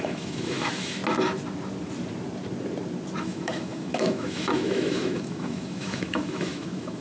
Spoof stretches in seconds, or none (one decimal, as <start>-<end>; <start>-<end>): 0.0-1.0; 3.2-7.0